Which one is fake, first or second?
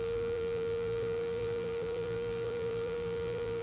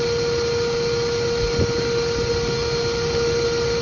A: first